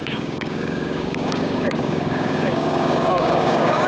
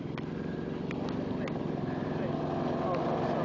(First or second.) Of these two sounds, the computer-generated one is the first